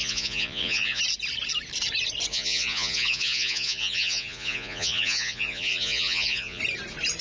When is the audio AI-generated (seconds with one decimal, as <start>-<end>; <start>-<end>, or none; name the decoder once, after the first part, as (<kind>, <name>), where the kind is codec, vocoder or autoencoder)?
0.0-1.0 (vocoder, Vocos); 2.3-6.6